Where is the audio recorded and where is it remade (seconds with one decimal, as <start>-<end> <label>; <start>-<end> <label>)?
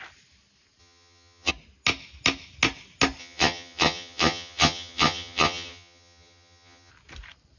0.0-0.8 recorded; 0.8-1.5 remade; 1.5-3.2 recorded; 3.2-6.9 remade; 6.9-7.6 recorded